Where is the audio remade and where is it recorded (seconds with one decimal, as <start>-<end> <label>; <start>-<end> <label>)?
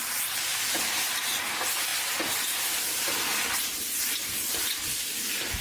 0.0-5.6 recorded